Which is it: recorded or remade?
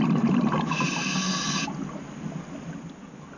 recorded